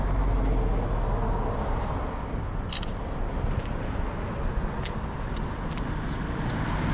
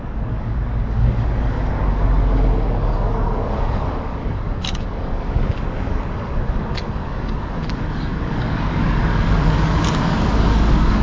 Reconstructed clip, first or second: second